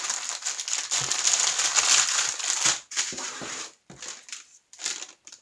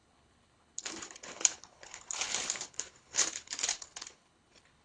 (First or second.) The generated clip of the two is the second